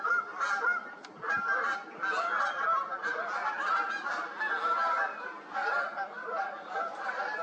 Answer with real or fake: real